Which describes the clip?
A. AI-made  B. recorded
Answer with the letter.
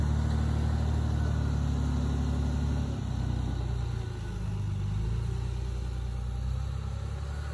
B